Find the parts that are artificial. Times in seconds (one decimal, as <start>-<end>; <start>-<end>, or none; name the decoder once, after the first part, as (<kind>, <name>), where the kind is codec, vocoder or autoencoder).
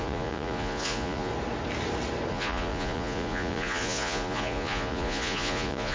0.0-1.3 (vocoder, Vocos); 2.3-5.9